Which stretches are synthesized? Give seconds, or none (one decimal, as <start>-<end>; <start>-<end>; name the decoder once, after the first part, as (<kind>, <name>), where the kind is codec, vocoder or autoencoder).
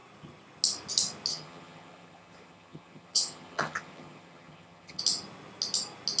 1.3-5.0 (vocoder, HiFi-GAN)